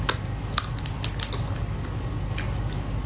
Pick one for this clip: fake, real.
real